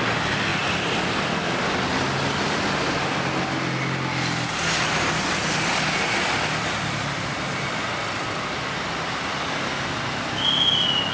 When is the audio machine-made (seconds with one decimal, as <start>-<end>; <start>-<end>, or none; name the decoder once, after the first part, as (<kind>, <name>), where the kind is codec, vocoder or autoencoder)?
none